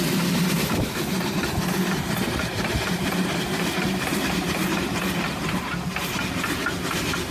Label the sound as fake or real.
fake